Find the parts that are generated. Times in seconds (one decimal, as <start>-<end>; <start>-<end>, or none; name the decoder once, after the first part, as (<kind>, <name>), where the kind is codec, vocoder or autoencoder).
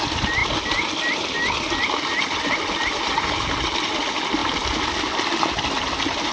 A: none